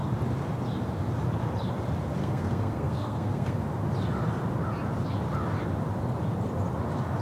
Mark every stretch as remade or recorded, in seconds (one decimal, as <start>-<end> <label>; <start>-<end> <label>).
0.0-2.2 recorded; 2.2-3.6 remade; 3.6-7.2 recorded